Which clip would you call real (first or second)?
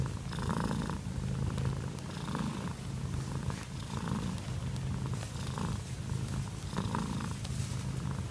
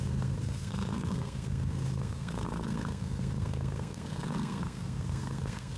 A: first